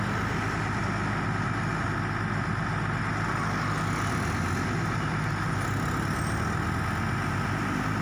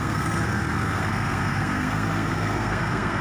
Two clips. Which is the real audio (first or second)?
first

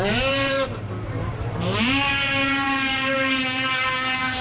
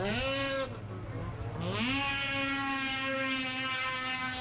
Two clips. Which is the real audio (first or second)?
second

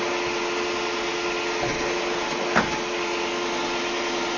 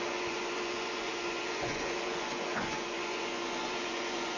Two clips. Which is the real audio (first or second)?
first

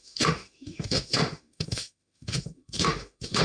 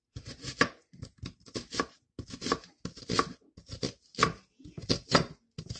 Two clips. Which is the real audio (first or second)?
second